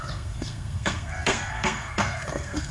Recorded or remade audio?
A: remade